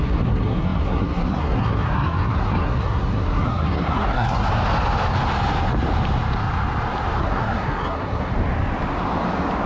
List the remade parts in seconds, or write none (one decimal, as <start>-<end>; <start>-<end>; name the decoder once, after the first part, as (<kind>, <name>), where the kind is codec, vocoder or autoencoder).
0.0-4.5 (codec, SNAC); 7.2-8.3